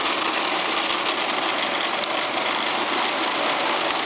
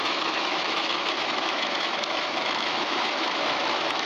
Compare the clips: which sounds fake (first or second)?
second